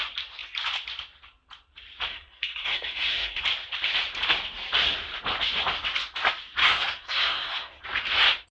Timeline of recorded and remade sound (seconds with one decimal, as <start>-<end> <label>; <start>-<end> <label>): 0.0-2.1 recorded; 2.1-3.4 remade; 3.4-6.6 recorded; 6.6-7.8 remade; 7.8-8.5 recorded